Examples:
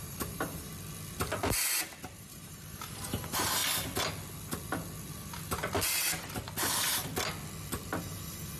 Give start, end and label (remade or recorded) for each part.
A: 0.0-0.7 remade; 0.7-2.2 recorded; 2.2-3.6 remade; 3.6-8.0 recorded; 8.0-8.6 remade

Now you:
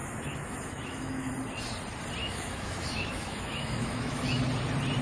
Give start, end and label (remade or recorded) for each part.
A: 0.0-1.3 remade; 1.3-2.2 recorded; 2.2-4.4 remade; 4.4-5.0 recorded